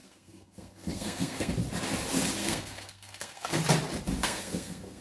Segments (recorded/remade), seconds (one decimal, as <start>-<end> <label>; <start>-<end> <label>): 0.0-1.5 remade; 1.5-2.4 recorded; 2.4-3.6 remade; 3.6-4.2 recorded; 4.2-5.0 remade